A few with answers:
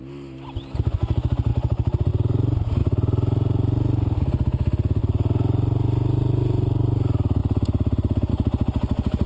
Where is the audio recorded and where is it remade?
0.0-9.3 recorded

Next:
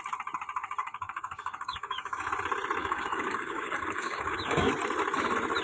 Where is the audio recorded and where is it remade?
0.0-0.8 recorded; 0.8-2.3 remade; 2.3-2.8 recorded; 2.8-4.7 remade; 4.7-5.6 recorded

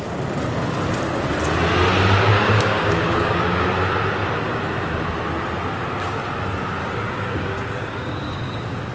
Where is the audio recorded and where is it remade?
0.0-2.3 recorded; 2.3-3.7 remade; 3.7-6.8 recorded; 6.8-8.9 remade

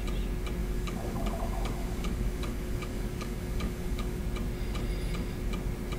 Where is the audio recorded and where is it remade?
0.0-0.6 recorded; 0.6-4.2 remade; 4.2-6.0 recorded